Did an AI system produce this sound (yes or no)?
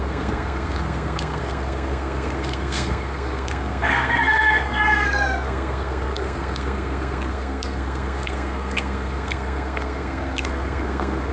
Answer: yes